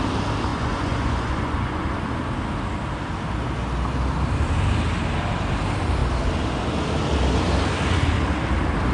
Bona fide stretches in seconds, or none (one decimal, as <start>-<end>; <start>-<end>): 0.0-0.5; 1.9-8.9